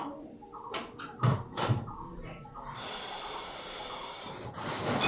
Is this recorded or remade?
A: remade